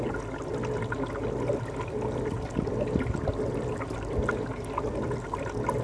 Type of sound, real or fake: real